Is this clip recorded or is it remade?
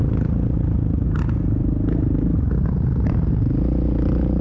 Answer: recorded